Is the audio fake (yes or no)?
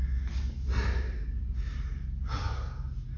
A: no